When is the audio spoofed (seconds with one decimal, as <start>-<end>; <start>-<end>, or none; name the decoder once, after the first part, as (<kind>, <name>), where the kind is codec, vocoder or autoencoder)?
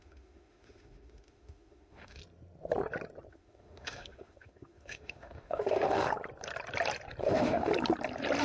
0.0-2.2 (autoencoder, DAC-VAE); 3.3-6.1; 7.2-7.7